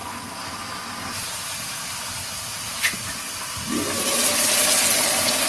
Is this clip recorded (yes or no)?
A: yes